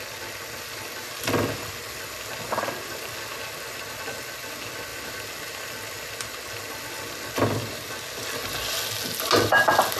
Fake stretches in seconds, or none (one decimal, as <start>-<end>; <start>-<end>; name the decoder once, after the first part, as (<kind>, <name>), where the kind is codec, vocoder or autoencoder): none

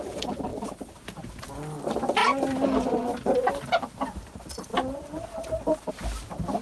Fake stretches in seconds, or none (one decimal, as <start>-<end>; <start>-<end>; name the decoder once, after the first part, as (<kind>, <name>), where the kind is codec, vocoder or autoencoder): none

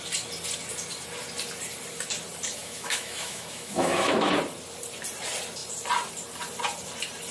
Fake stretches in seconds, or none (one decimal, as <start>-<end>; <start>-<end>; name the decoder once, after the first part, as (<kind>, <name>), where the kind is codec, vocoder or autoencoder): 2.6-4.3 (autoencoder, DAC-VAE)

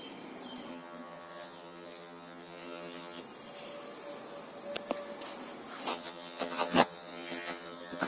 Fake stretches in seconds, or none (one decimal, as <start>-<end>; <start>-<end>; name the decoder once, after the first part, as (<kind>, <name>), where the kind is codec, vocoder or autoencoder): 0.7-3.2 (vocoder, HiFi-GAN); 5.9-8.1

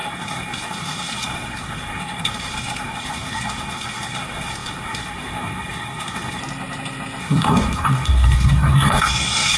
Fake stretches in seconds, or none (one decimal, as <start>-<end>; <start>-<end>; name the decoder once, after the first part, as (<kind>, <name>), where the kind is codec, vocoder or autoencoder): 0.0-6.4 (codec, SNAC); 7.2-9.6

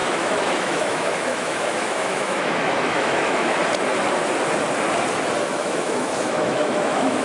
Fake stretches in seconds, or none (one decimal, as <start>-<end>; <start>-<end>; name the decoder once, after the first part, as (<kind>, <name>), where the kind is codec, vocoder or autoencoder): 0.0-3.6 (autoencoder, DAC-VAE); 5.6-7.2

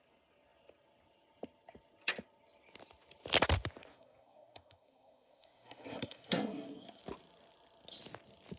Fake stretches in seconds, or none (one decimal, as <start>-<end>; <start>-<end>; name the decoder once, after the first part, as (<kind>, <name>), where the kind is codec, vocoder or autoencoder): 3.9-7.0 (codec, SNAC)

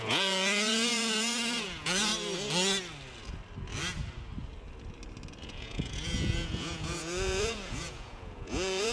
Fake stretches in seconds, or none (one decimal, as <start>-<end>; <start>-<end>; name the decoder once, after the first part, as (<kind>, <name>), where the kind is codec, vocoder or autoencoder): 0.0-2.1 (vocoder, Vocos); 5.4-8.9